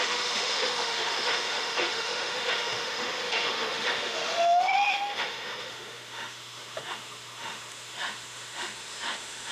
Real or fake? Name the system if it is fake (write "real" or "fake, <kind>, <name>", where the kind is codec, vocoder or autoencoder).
fake, autoencoder, DAC-VAE